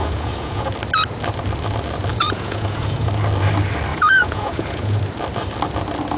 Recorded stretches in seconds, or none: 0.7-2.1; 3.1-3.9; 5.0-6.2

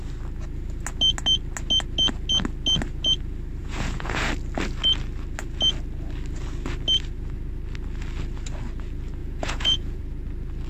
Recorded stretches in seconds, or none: 0.0-3.6; 4.3-9.2; 10.0-10.7

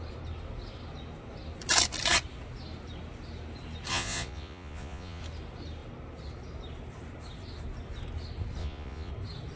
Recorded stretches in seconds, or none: 0.0-3.9; 5.2-8.6; 9.1-9.6